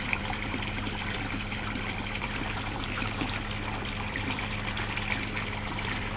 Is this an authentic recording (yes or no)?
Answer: no